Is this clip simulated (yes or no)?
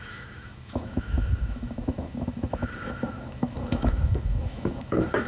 yes